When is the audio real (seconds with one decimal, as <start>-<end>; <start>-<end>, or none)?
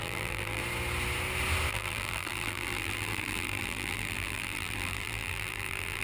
0.6-1.7